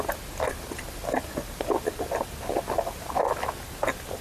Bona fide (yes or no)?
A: yes